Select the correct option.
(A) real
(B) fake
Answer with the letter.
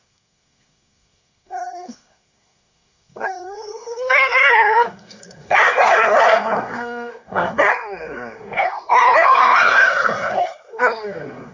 B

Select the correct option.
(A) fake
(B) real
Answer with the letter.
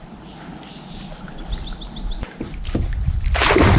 B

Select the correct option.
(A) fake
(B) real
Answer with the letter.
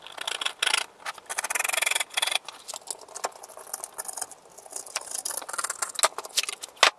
B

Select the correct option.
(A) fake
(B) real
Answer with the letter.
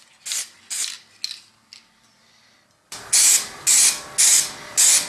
B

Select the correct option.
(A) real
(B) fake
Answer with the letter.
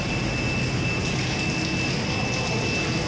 A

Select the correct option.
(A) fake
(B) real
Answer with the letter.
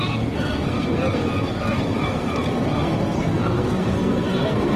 A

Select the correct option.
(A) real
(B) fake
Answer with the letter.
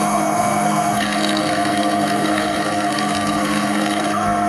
B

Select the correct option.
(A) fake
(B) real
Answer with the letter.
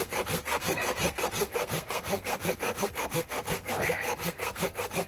A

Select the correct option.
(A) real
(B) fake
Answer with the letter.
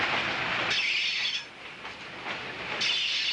A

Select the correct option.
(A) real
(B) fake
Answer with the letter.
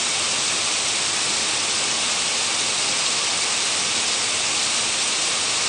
A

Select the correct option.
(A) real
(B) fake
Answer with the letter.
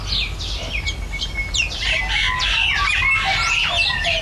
A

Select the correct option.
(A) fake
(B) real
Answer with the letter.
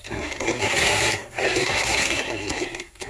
A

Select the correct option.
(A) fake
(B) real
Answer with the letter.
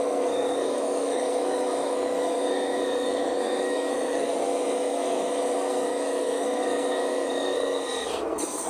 A